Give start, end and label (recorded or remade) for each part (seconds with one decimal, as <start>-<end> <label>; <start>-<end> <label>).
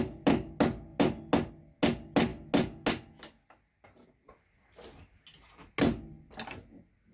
0.0-7.1 recorded